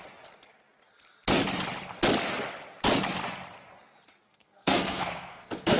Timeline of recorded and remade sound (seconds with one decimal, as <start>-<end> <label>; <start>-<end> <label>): 0.0-4.3 recorded; 4.3-5.8 remade

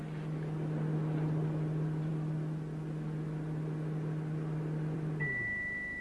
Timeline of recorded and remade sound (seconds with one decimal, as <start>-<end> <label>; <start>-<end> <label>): 0.0-6.0 recorded

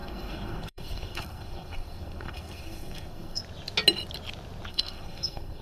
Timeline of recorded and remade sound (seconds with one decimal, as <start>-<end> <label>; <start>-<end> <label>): 0.0-3.4 remade; 3.4-4.7 recorded; 4.7-5.6 remade

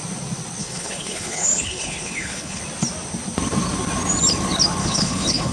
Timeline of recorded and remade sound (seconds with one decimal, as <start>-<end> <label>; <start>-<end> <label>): 0.0-0.6 recorded; 0.6-2.6 remade; 2.6-4.8 recorded; 4.8-5.5 remade

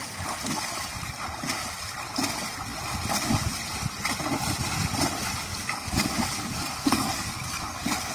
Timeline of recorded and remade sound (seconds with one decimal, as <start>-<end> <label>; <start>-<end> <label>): 0.0-5.5 recorded; 5.5-8.1 remade

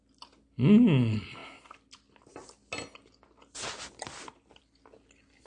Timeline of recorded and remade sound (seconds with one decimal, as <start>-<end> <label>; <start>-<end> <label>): 0.0-5.5 recorded